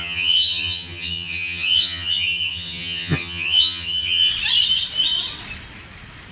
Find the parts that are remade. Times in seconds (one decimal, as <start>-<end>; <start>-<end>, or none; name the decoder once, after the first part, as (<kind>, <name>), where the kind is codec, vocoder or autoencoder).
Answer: 0.0-4.3 (vocoder, HiFi-GAN)